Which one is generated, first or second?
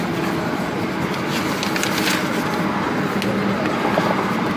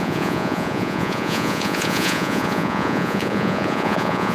second